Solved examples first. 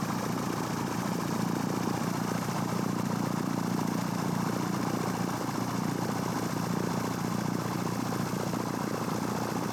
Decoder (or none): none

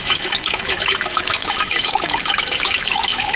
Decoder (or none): autoencoder, DAC-VAE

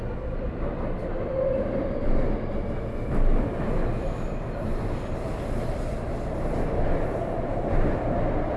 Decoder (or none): none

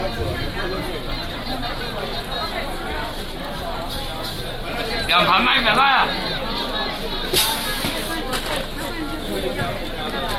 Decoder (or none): none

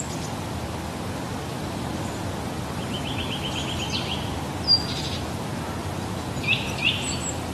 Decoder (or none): none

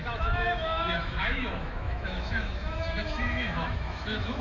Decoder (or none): autoencoder, DAC-VAE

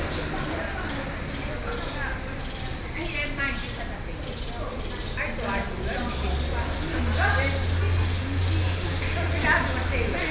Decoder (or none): none